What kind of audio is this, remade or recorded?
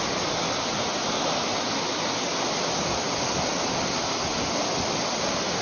recorded